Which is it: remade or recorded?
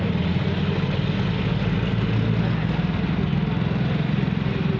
recorded